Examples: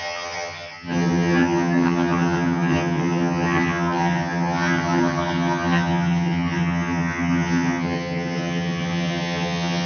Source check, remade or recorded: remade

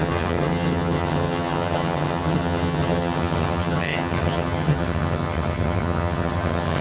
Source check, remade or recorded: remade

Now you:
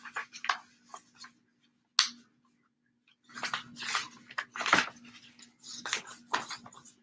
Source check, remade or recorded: recorded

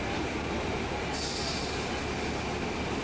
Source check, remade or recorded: recorded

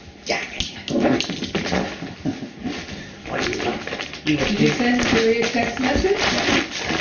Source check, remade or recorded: recorded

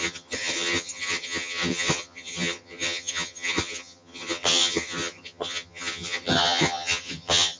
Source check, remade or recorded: remade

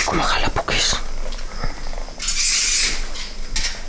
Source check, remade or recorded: recorded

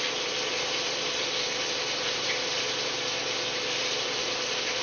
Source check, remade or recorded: recorded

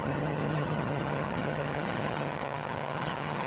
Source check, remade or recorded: remade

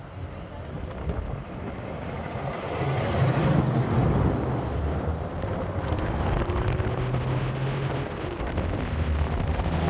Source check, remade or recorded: recorded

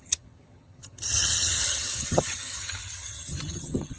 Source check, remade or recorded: remade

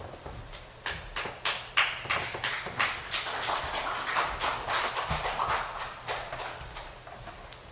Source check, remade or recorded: recorded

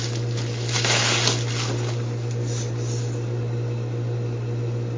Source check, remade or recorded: recorded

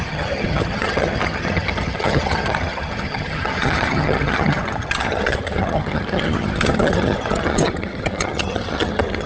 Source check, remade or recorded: remade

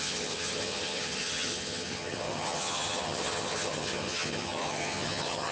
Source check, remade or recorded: remade